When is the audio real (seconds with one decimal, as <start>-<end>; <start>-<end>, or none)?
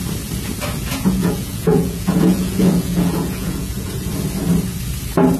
0.0-0.9; 4.1-5.4